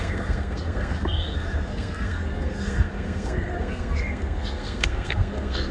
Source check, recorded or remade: remade